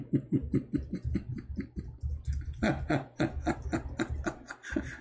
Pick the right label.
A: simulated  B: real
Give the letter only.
B